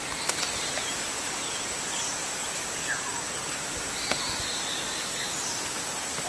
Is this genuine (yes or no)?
yes